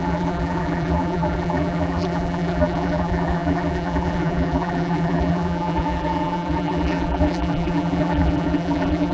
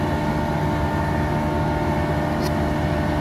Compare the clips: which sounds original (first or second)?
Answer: second